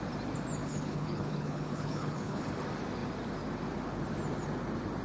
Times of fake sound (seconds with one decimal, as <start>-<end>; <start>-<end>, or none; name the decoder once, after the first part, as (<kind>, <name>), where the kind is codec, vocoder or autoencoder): 0.6-2.5 (codec, HILCodec)